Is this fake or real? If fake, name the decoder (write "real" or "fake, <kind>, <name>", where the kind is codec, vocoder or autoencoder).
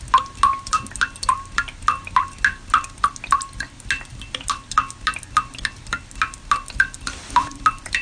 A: real